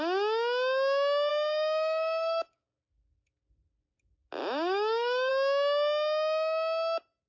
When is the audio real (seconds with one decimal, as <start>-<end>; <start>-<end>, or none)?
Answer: 0.0-1.3; 5.3-7.3